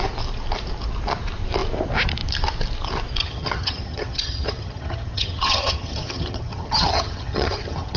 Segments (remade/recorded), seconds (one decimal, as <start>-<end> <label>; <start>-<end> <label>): 0.0-3.2 recorded; 3.2-8.0 remade